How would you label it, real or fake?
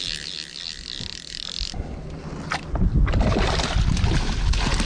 real